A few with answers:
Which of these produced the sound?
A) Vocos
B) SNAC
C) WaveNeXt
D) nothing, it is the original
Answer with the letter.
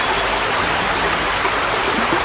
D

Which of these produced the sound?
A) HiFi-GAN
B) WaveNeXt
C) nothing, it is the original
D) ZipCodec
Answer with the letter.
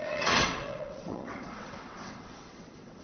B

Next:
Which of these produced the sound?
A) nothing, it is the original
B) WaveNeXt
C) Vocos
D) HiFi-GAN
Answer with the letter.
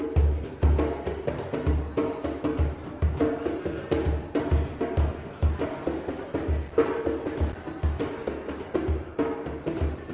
A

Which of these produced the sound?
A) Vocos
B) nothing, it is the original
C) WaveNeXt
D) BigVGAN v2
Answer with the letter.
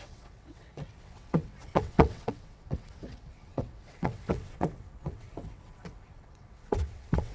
C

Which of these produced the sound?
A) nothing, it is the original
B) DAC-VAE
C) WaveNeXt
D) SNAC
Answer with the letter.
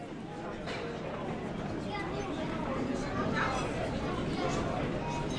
A